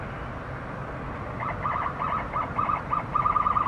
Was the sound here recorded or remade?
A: recorded